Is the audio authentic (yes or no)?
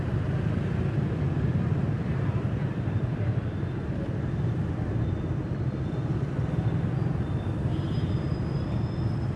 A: yes